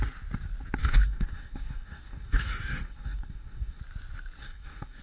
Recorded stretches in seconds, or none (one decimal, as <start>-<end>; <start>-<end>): 0.0-0.8; 3.8-4.4